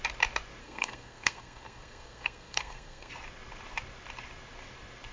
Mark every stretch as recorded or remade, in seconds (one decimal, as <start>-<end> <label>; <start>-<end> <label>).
0.0-0.6 recorded; 0.6-3.1 remade; 3.1-5.1 recorded